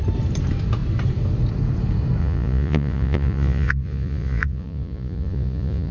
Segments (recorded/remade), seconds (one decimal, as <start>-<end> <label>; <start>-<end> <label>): 0.0-2.2 recorded; 2.2-5.9 remade